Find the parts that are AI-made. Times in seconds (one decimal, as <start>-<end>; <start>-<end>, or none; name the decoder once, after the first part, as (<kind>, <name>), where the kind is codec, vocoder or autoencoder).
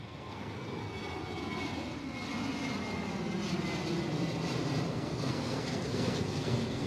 0.0-0.8 (codec, SNAC); 4.9-6.9